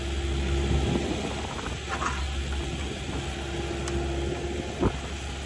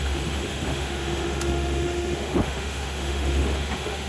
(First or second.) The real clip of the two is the first